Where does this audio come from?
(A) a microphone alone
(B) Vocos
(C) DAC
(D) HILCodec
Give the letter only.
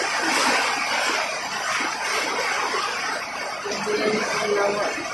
A